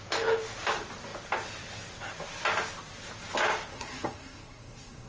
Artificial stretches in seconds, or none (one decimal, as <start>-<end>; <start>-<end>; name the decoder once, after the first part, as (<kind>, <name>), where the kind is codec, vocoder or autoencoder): 3.7-5.1 (codec, SNAC)